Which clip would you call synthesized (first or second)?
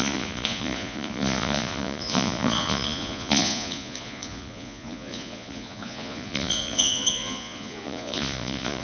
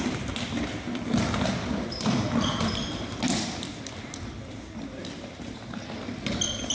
first